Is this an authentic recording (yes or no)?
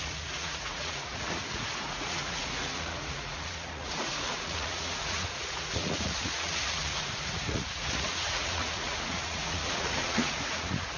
no